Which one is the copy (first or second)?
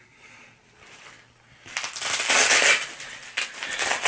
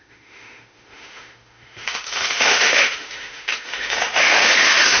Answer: second